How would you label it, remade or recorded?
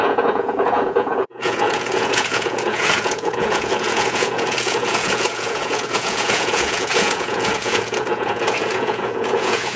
remade